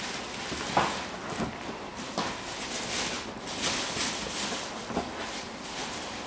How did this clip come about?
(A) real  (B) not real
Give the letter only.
A